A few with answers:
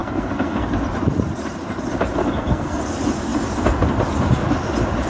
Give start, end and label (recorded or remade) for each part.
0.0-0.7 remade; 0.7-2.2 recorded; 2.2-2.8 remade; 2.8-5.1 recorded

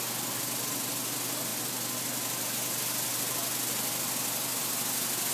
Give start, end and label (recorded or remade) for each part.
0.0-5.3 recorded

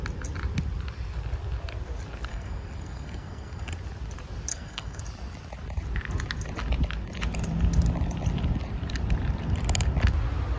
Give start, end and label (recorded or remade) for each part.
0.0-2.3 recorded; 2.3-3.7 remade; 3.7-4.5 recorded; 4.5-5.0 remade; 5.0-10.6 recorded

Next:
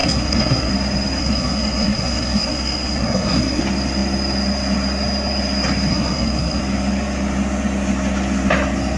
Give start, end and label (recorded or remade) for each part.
0.0-0.7 remade; 0.7-1.2 recorded; 1.2-3.6 remade; 3.6-5.9 recorded; 5.9-6.6 remade; 6.6-9.0 recorded

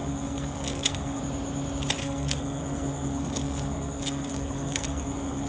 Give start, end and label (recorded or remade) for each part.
0.0-1.2 remade; 1.2-2.0 recorded; 2.0-5.5 remade

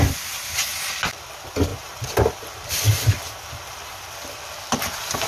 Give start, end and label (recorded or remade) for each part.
0.0-5.3 recorded

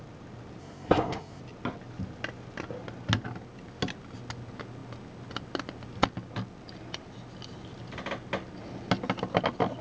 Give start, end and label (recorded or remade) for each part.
0.0-0.6 recorded; 0.6-1.4 remade; 1.4-9.8 recorded